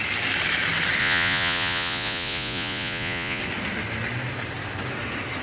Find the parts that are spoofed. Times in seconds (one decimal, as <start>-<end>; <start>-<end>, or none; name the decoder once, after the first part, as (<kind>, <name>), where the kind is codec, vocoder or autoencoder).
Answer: 1.0-3.4 (vocoder, Vocos)